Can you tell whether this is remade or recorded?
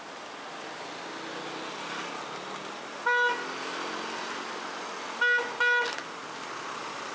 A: recorded